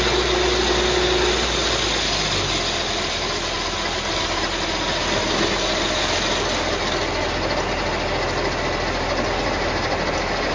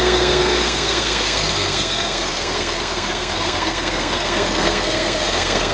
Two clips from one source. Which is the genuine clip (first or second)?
first